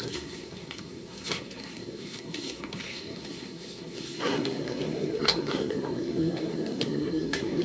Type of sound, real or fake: fake